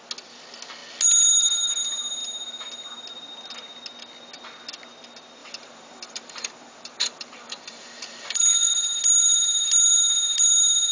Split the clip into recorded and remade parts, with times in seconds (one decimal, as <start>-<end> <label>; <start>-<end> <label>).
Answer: 0.0-5.4 recorded; 5.4-8.7 remade; 8.7-10.9 recorded